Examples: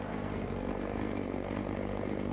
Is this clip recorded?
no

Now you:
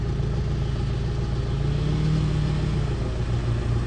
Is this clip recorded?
yes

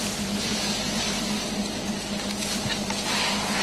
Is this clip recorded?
yes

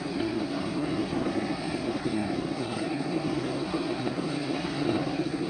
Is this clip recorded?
no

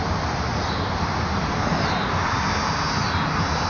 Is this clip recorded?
yes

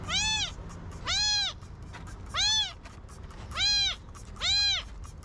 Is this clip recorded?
yes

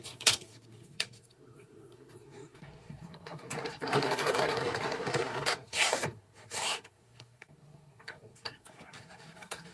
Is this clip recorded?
no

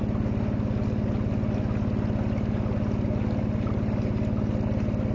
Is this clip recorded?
yes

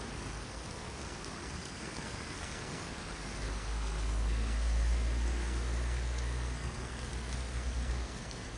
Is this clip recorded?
no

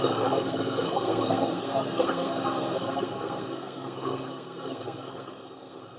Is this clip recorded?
no